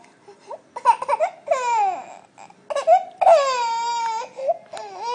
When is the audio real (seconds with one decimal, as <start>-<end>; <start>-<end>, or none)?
0.0-5.1